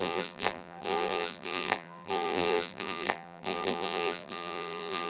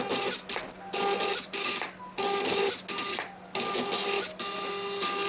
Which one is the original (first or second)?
second